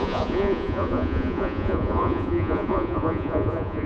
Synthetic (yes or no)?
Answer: yes